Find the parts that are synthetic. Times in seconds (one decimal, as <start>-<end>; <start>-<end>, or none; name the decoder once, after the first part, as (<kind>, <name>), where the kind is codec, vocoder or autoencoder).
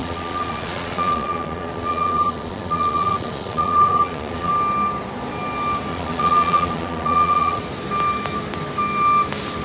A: 0.0-4.5 (vocoder, Vocos); 5.9-7.6